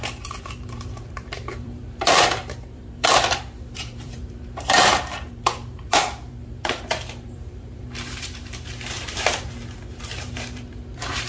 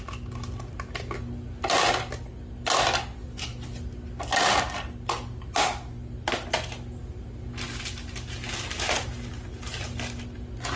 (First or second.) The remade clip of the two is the first